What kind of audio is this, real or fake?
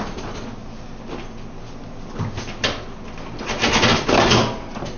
real